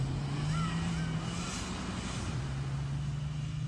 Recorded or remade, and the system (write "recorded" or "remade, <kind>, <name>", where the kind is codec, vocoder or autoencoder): recorded